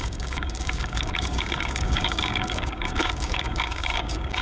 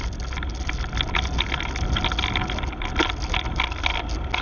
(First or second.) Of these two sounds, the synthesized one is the first